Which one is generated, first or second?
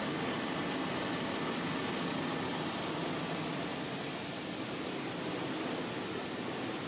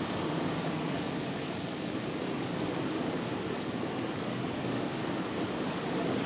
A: second